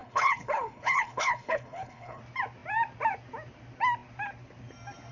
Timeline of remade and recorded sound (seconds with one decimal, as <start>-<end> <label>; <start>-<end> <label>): 0.0-2.2 remade; 2.2-5.1 recorded